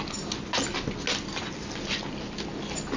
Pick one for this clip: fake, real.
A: real